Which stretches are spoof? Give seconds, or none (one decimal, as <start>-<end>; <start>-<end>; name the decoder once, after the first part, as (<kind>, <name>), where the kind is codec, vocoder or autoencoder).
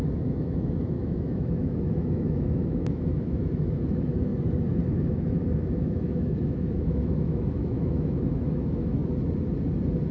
0.0-4.3 (autoencoder, DAC-VAE); 4.9-9.0